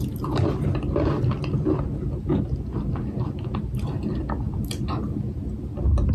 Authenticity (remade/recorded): recorded